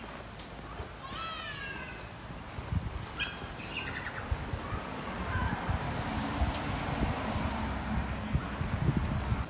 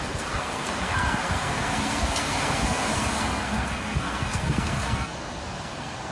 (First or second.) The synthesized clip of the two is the second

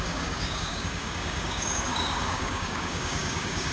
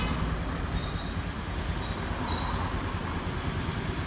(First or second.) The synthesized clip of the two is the first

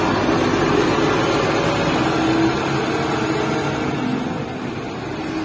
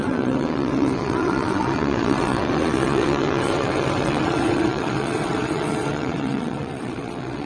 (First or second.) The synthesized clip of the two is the second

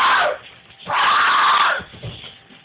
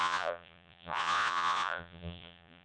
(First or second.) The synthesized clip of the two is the second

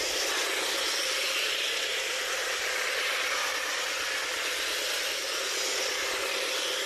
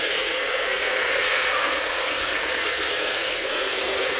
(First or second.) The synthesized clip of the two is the second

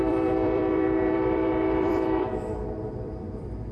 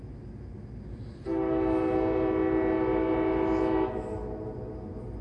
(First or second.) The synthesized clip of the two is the first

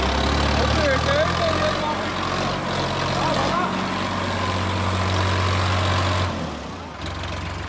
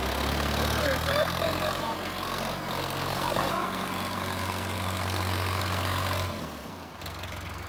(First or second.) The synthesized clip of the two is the second